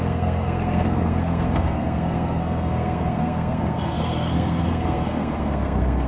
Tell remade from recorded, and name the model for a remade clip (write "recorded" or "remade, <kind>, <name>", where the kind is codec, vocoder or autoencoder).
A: remade, codec, SNAC